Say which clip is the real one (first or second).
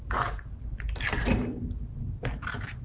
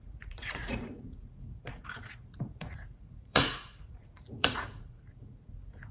first